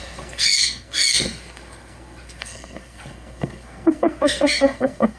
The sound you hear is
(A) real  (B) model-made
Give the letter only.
B